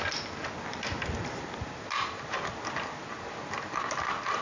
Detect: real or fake real